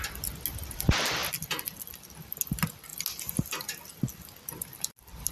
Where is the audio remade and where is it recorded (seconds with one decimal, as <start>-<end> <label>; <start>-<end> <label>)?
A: 0.0-5.3 recorded